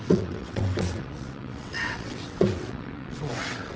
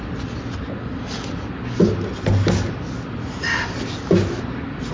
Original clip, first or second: second